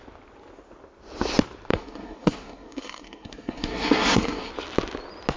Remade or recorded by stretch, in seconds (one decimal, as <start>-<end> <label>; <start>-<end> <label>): 0.0-1.7 recorded; 1.7-4.5 remade; 4.5-5.4 recorded